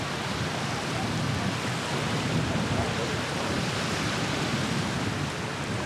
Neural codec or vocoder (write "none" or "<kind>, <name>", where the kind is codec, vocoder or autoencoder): vocoder, BigVGAN v2